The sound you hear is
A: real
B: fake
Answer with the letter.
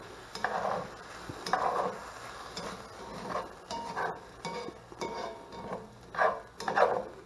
A